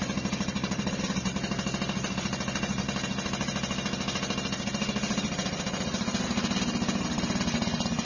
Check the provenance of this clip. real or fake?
real